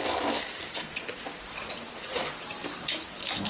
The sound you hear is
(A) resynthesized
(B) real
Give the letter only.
B